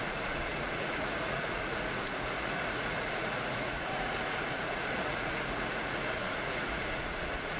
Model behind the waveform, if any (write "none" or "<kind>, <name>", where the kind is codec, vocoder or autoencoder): vocoder, Vocos